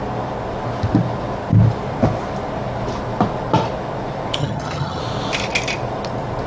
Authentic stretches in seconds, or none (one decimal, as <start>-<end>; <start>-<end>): 0.0-4.4; 5.0-6.5